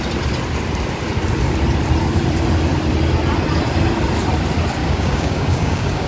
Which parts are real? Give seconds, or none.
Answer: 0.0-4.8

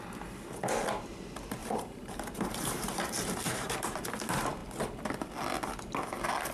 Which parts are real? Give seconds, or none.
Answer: 0.0-1.6; 4.1-6.5

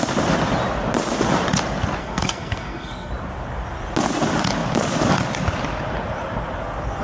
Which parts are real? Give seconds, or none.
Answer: 0.0-2.0; 3.1-7.0

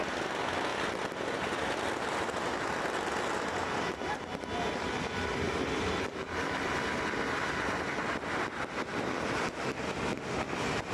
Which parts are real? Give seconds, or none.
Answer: 0.0-0.7; 5.8-10.9

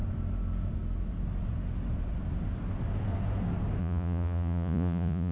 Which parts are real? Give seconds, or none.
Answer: 0.0-3.8